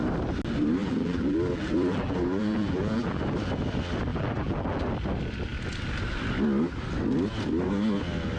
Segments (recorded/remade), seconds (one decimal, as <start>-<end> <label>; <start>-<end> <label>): 0.0-0.8 recorded; 0.8-3.2 remade; 3.2-4.1 recorded; 4.1-4.9 remade; 4.9-8.4 recorded